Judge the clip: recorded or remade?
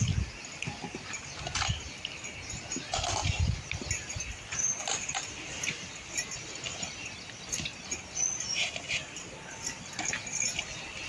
recorded